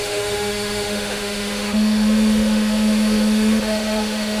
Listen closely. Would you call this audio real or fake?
fake